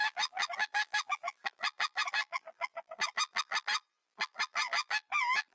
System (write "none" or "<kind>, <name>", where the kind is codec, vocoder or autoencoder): vocoder, BigVGAN v2